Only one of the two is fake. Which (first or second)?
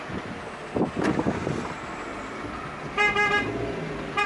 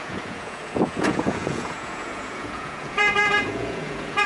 second